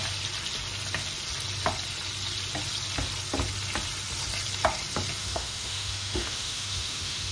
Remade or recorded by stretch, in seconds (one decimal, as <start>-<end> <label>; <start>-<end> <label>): 0.0-5.2 recorded; 5.2-7.3 remade